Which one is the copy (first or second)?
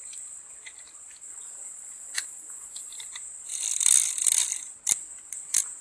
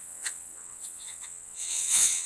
second